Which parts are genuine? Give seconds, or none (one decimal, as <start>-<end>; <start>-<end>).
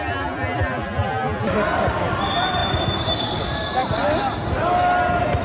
0.0-2.6; 4.2-5.4